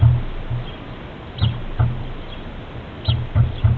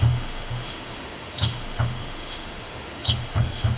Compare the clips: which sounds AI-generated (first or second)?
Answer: second